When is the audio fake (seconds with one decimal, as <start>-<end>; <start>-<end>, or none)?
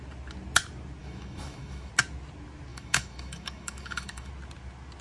1.0-1.9; 2.7-4.3